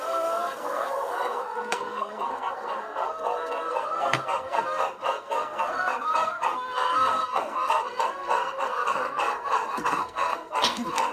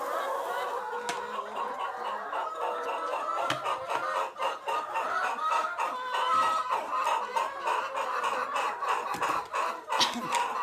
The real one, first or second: second